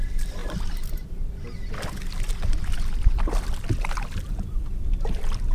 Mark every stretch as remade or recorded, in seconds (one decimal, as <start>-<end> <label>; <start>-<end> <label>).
0.0-0.4 recorded; 0.4-3.7 remade; 3.7-5.5 recorded